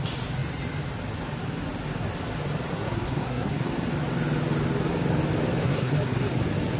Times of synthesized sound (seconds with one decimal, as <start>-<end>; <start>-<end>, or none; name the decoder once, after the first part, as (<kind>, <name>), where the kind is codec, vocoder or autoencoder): 2.7-3.7 (codec, SNAC); 5.6-6.3